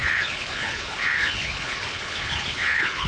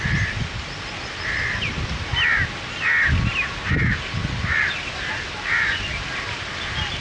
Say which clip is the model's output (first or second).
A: first